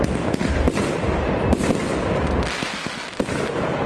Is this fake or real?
real